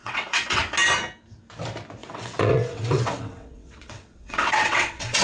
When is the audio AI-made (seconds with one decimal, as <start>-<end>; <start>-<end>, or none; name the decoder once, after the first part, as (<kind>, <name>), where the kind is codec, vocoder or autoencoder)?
0.0-0.6 (vocoder, WaveNeXt); 2.0-5.2